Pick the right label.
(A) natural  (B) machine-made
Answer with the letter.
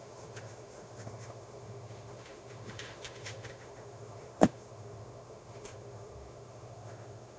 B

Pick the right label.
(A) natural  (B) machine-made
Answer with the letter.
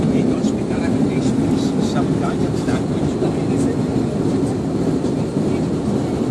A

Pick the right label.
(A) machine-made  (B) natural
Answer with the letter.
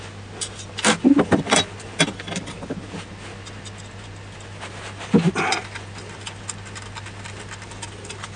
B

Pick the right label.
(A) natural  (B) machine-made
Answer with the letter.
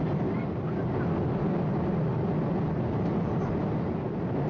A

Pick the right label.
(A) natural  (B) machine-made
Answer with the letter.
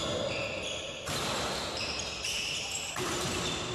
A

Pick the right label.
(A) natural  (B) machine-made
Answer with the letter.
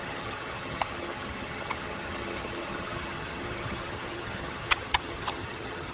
B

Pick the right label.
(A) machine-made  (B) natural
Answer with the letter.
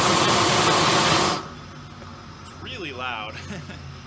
B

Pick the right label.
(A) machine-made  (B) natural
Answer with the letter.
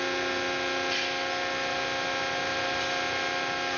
B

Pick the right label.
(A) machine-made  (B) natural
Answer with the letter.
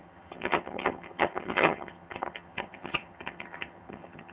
A